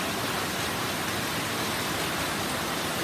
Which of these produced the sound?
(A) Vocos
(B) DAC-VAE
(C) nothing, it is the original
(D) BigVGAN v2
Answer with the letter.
C